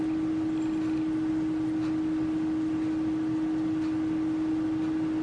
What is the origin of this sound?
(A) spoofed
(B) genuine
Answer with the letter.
B